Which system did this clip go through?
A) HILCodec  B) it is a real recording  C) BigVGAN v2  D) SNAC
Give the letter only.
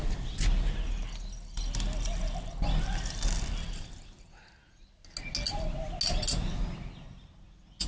B